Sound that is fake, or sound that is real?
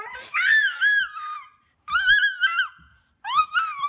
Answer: fake